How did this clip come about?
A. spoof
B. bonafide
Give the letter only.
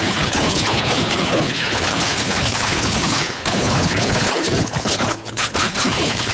A